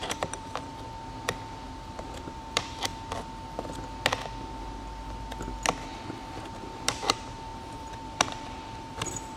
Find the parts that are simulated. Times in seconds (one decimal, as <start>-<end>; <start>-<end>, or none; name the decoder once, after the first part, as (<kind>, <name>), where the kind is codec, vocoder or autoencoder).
0.0-0.7 (vocoder, BigVGAN v2); 2.0-2.9; 6.5-9.4